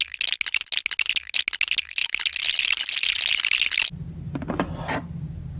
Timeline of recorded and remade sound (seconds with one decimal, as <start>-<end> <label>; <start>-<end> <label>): 0.0-5.6 recorded